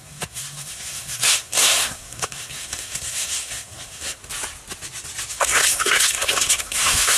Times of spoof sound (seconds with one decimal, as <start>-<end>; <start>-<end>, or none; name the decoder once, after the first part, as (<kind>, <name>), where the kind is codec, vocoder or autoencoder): 0.0-4.2 (codec, SNAC); 5.3-7.2